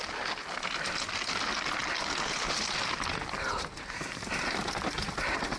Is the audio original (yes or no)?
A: yes